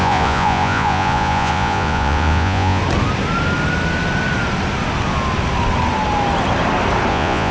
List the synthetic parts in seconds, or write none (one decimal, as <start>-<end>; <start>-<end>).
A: 0.0-2.8; 7.1-7.5